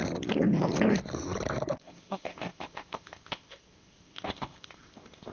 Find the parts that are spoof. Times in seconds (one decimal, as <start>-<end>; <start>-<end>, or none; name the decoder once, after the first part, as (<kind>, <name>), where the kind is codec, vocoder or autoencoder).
1.8-5.3 (codec, ZipCodec)